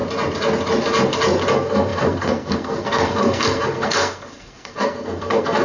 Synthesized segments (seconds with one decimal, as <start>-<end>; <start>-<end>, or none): 1.5-5.6